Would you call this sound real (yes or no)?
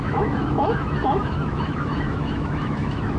no